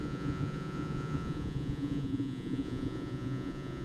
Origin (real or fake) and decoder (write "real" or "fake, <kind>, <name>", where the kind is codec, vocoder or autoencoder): fake, vocoder, Vocos